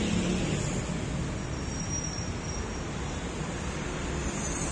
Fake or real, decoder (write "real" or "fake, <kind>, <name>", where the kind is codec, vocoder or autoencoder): real